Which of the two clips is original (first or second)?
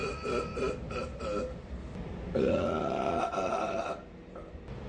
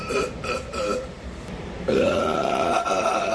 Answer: first